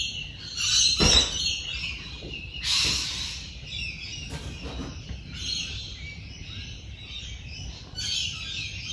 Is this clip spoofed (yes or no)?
no